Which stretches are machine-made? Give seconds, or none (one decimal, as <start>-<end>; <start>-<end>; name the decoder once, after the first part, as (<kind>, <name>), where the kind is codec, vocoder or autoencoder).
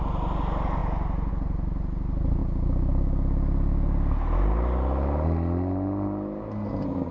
none